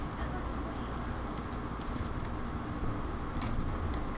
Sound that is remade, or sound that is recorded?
recorded